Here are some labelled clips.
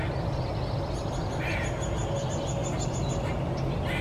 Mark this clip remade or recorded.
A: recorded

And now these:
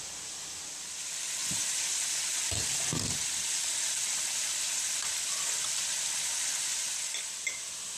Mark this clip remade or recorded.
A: recorded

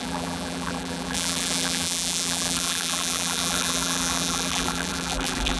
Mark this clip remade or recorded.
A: remade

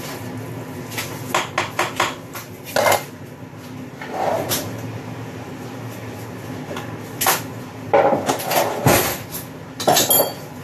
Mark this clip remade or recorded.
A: recorded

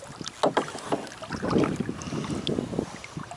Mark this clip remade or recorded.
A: recorded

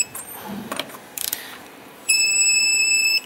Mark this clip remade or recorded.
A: remade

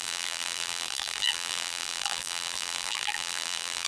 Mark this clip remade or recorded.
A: remade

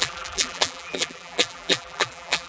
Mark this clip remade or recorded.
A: remade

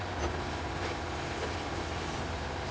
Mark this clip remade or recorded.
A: recorded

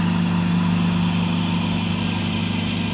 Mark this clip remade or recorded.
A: remade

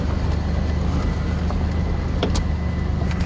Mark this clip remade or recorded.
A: recorded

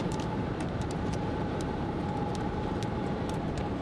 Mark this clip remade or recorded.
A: remade